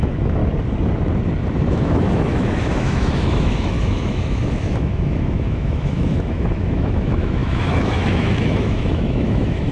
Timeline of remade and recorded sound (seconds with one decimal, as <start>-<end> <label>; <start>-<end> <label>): 0.0-0.4 remade; 0.4-1.7 recorded; 1.7-9.7 remade